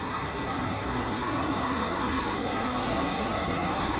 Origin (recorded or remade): remade